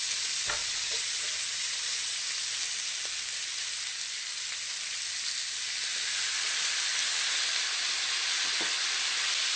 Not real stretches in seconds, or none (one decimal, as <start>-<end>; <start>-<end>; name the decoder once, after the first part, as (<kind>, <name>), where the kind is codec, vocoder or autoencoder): 0.6-2.2 (vocoder, Vocos)